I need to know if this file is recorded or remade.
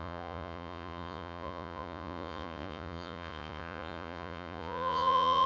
remade